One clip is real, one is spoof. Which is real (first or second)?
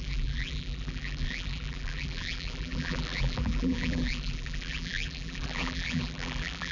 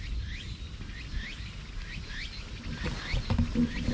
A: second